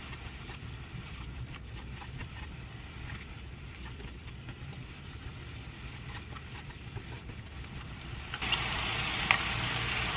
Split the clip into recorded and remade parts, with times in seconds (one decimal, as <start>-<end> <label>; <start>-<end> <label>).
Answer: 0.0-10.2 recorded